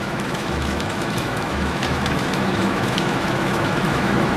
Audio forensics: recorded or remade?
remade